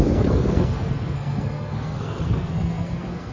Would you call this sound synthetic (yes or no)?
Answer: yes